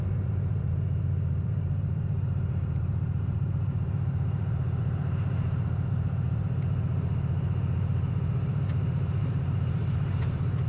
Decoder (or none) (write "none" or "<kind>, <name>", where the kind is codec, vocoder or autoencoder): vocoder, BigVGAN v2